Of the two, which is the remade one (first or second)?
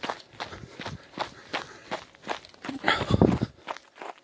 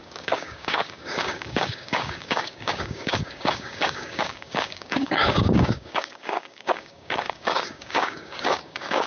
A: second